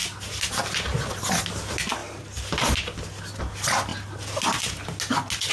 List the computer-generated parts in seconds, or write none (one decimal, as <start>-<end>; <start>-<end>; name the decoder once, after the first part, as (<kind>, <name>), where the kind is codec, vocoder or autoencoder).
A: none